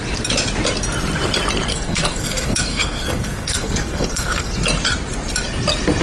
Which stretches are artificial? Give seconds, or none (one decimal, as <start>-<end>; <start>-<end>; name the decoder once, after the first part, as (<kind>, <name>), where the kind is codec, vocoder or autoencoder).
1.7-4.5 (codec, SNAC)